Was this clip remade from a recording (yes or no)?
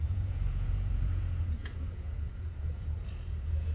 yes